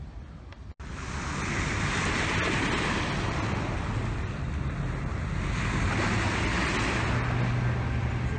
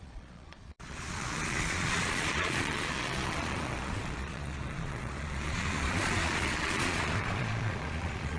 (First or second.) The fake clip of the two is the second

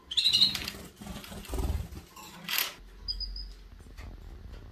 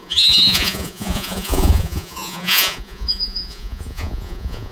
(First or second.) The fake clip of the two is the second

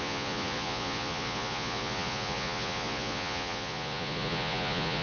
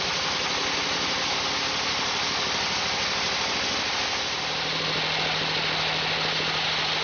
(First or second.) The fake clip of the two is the first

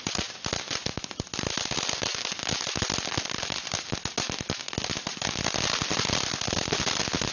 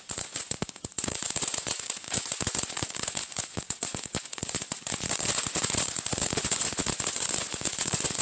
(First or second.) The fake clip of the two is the second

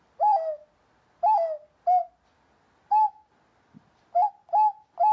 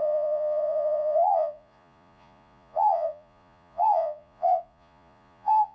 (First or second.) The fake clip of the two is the second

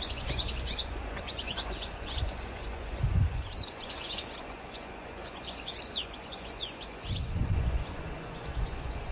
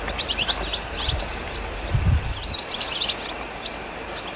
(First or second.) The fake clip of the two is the first